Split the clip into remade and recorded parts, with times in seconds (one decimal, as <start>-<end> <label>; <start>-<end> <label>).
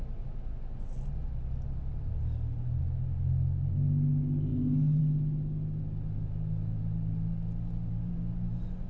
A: 0.0-8.9 recorded